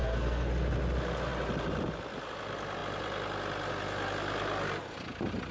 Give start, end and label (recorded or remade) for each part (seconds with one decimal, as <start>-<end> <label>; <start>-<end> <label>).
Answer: 0.0-0.5 remade; 0.5-5.5 recorded